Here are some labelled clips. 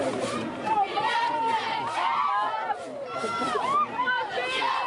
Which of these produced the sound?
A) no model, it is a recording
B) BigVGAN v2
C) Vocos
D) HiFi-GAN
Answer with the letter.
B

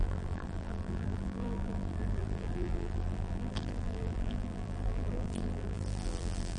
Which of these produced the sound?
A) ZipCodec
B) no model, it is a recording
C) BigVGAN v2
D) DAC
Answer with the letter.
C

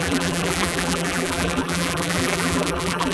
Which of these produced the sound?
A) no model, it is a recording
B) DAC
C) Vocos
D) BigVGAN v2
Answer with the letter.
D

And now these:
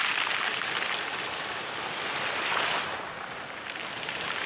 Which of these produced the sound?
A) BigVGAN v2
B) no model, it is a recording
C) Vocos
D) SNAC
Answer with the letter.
B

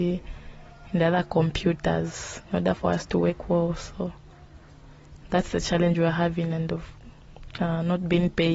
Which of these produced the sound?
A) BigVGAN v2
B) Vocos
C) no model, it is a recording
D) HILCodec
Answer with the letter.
A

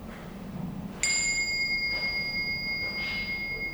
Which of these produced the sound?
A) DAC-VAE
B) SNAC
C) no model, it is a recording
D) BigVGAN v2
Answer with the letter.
C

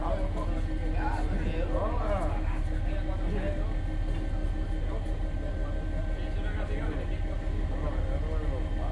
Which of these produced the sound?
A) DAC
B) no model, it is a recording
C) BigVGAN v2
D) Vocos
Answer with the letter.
B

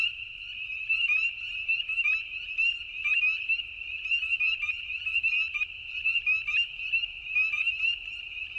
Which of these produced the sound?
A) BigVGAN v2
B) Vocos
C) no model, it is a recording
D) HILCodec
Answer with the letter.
A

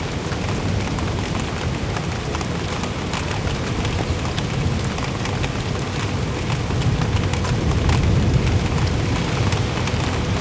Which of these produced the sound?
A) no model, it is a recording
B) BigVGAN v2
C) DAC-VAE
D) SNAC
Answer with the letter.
A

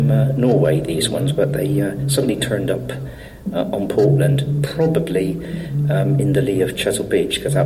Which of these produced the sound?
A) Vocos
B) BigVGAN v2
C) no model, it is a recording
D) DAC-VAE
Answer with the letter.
C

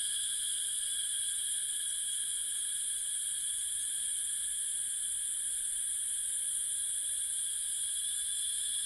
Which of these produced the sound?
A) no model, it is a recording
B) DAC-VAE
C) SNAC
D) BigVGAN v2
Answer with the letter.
D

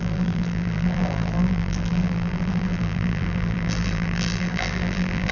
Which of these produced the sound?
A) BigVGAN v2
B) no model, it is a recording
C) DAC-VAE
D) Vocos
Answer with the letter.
A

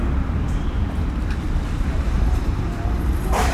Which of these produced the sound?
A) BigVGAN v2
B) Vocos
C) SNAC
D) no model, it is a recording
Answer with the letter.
A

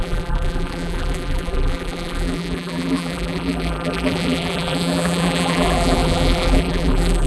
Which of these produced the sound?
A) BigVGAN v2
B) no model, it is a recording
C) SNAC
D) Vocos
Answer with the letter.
A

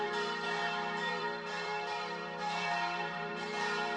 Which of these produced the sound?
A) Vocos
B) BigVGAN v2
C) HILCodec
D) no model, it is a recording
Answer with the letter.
B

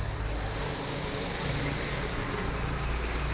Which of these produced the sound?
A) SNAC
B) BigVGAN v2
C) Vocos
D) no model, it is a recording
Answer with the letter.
D